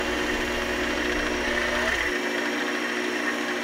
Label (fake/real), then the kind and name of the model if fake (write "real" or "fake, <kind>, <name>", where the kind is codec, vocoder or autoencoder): real